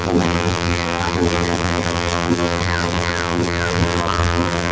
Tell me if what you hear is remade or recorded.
remade